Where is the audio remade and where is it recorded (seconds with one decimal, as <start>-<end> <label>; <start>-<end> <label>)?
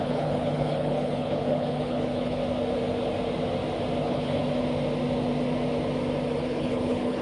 0.0-2.4 remade; 2.4-4.0 recorded; 4.0-4.4 remade; 4.4-6.4 recorded; 6.4-7.2 remade